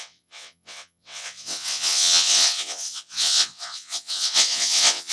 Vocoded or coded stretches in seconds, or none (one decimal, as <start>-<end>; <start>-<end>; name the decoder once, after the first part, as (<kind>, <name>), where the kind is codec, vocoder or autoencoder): 0.0-5.1 (vocoder, WaveNeXt)